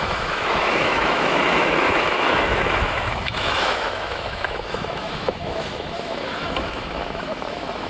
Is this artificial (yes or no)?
yes